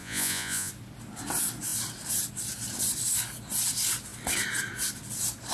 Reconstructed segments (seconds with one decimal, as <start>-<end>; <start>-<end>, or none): 0.0-0.7

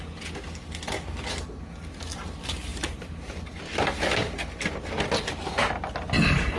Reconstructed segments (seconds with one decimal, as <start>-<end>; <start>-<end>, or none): none

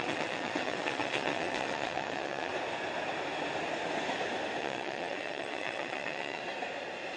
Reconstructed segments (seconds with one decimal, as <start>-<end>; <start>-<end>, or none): 0.0-2.5; 4.6-6.4